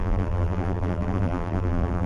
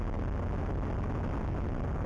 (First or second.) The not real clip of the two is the first